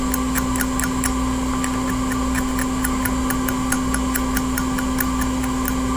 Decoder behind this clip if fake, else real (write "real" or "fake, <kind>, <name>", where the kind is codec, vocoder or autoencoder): real